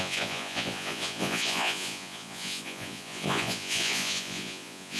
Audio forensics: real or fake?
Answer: fake